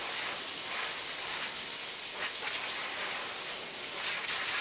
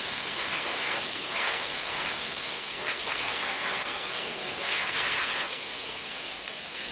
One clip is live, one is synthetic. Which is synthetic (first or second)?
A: second